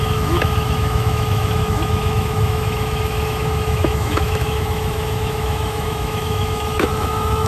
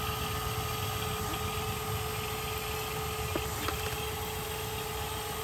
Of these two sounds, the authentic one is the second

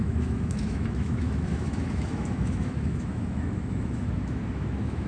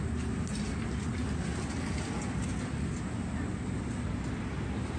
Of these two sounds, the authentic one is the second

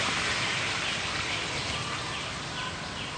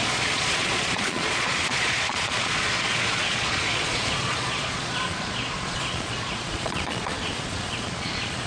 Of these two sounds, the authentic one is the first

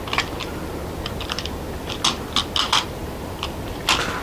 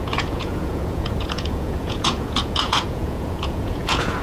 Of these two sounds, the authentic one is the first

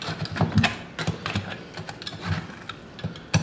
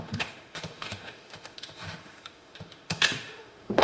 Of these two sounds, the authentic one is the first